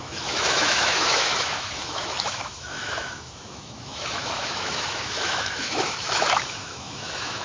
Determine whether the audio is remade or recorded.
remade